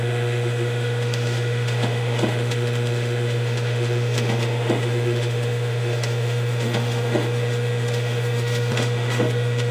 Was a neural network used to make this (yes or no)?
yes